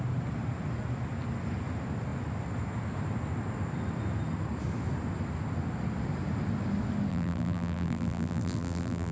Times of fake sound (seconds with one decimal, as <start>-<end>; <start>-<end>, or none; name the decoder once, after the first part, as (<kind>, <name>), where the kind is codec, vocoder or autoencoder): 7.1-9.1 (vocoder, BigVGAN v2)